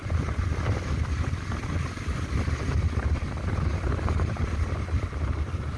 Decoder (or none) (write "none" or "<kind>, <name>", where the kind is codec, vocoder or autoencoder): none